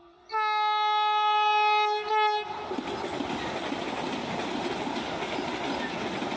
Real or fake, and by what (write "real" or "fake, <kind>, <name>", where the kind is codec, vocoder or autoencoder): real